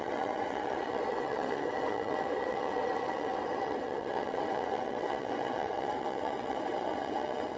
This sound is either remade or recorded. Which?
remade